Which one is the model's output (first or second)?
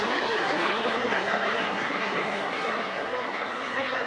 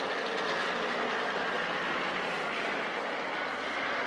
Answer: first